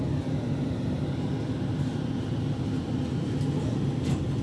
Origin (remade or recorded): recorded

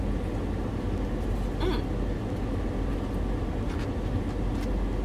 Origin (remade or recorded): recorded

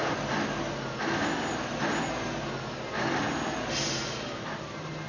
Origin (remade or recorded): recorded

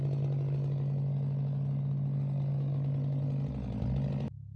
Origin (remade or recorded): recorded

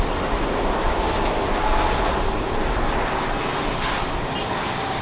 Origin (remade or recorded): recorded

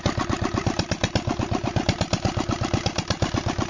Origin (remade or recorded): recorded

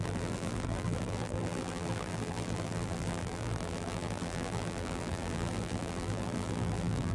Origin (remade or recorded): remade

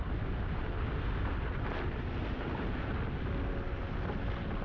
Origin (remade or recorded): recorded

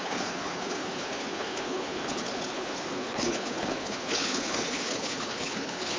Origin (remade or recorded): remade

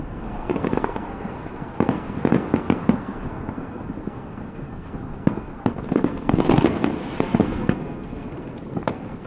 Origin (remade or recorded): remade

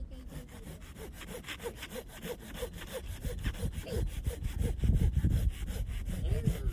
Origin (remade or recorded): recorded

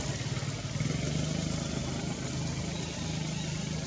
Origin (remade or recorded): recorded